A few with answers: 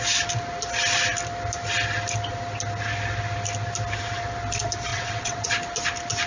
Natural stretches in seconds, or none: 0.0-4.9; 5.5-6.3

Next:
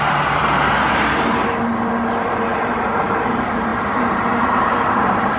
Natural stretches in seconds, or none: 0.4-2.1

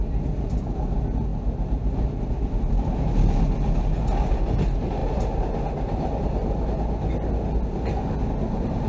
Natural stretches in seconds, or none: 0.0-1.3; 2.3-8.9

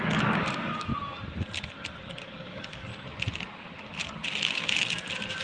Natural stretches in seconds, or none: 0.9-2.0; 2.9-5.4

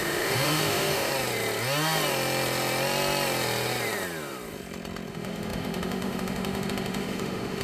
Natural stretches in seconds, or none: 1.1-5.1

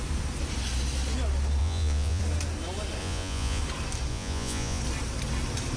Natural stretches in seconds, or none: 0.0-1.6; 2.2-3.0; 3.6-4.1; 4.8-5.8